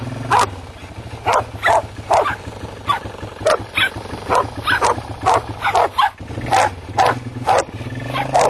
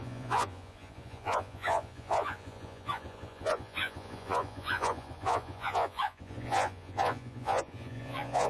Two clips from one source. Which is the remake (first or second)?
second